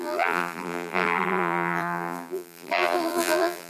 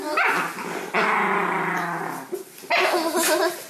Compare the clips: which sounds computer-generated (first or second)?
first